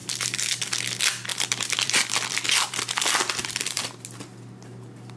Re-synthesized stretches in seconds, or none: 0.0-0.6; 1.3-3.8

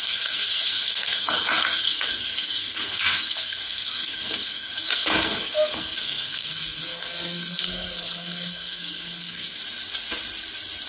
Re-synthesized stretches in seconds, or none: 0.0-9.6

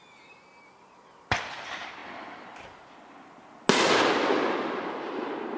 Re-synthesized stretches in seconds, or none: none

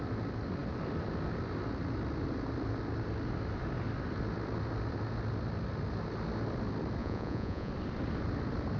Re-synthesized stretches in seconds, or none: 7.0-7.7